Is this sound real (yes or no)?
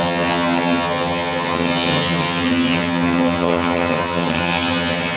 no